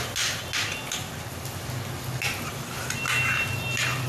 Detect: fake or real real